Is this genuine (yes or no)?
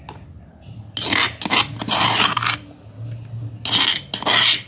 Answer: yes